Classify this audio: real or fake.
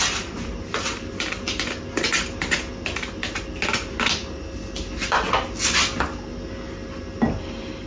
real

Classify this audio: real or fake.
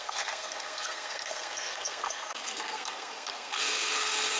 fake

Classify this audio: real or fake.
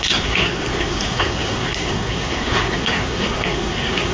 fake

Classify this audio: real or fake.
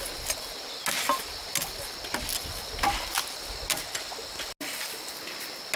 real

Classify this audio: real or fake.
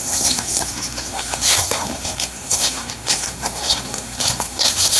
fake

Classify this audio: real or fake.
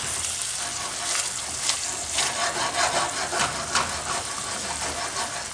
real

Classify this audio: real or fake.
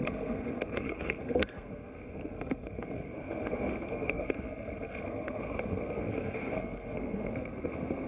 fake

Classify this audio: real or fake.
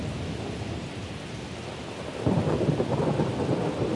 real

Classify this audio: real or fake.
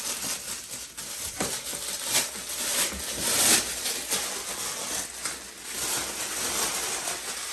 real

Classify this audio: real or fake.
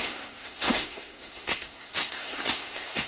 fake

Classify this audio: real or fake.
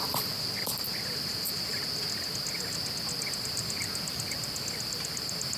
real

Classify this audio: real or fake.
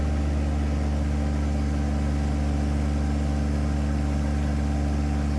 real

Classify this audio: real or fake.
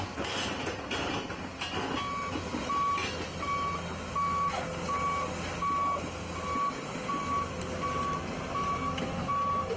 real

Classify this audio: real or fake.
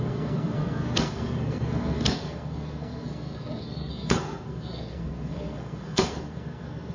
fake